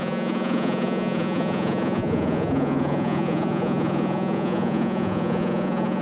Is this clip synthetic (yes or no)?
yes